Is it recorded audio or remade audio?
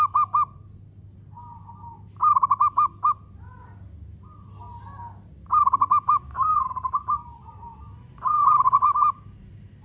recorded